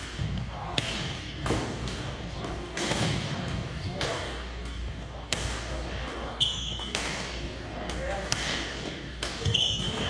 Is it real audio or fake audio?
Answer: fake